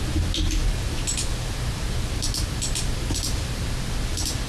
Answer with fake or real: real